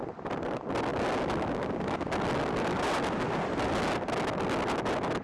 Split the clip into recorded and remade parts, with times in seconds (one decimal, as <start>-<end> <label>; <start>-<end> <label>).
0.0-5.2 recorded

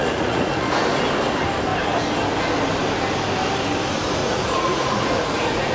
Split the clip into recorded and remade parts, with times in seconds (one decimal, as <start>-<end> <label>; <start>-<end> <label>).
0.0-0.8 remade; 0.8-4.2 recorded; 4.2-5.7 remade

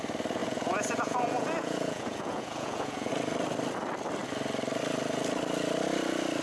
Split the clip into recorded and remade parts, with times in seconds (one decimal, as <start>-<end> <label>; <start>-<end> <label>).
0.0-0.4 recorded; 0.4-3.1 remade; 3.1-6.4 recorded

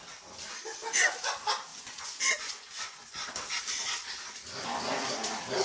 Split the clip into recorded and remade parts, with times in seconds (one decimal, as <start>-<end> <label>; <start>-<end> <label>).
0.0-1.7 recorded; 1.7-3.3 remade; 3.3-5.6 recorded